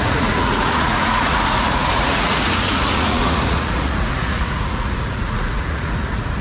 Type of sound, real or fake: fake